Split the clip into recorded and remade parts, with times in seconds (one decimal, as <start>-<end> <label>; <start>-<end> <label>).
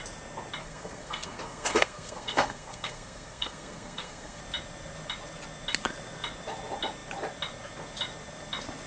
0.0-0.6 recorded; 0.6-4.4 remade; 4.4-8.9 recorded